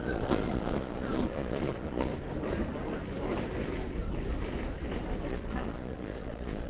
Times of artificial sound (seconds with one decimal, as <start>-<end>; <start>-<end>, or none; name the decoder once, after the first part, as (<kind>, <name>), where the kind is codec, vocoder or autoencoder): 0.0-2.1 (vocoder, Vocos); 5.3-6.7